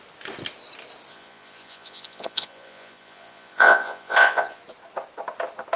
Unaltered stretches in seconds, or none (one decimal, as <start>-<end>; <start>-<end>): 0.0-1.1; 4.6-5.8